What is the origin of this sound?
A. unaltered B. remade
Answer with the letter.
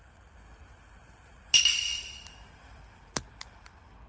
A